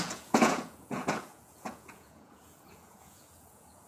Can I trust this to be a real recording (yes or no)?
no